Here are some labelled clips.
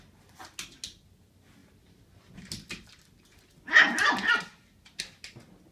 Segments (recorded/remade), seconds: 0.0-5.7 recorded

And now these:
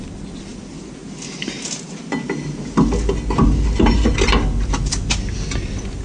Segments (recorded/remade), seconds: 0.0-6.0 recorded

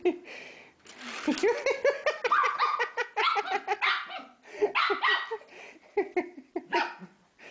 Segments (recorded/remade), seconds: 0.0-2.4 recorded; 2.4-3.4 remade; 3.4-7.5 recorded

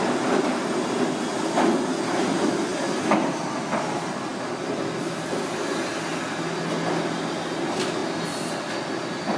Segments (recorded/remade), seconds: 0.0-9.4 recorded

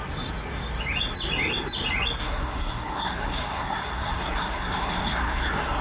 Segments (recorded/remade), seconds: 0.0-2.2 recorded; 2.2-5.8 remade

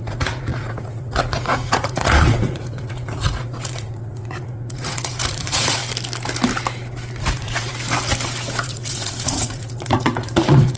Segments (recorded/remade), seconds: 0.0-5.8 remade; 5.8-7.2 recorded; 7.2-7.7 remade; 7.7-8.6 recorded; 8.6-10.8 remade

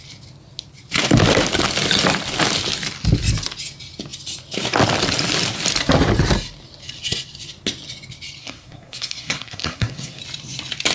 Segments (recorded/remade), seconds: 0.0-8.4 recorded; 8.4-10.2 remade; 10.2-10.9 recorded